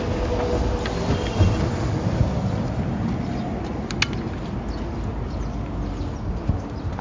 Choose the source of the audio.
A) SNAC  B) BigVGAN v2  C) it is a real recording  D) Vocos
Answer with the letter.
C